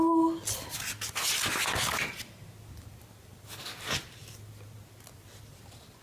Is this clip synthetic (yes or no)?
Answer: no